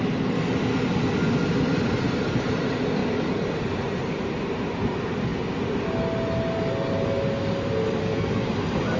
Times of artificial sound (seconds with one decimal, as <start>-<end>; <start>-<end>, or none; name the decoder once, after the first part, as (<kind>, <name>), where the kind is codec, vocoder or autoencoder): 8.0-8.5 (codec, SNAC)